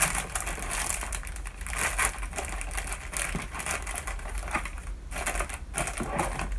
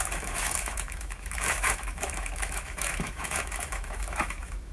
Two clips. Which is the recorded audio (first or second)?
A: first